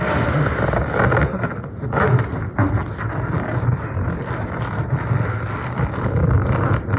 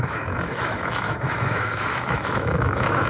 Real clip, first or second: first